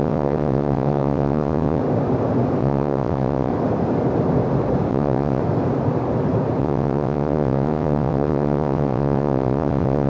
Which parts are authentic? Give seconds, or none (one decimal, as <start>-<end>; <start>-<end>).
1.8-2.6; 3.5-4.9; 5.4-6.6